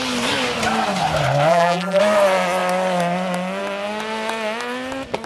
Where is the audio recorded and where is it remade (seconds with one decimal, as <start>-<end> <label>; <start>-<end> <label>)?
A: 0.0-1.5 recorded; 1.5-2.0 remade; 2.0-5.3 recorded